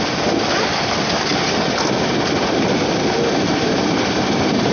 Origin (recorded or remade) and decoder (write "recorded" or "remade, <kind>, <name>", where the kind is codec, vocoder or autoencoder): recorded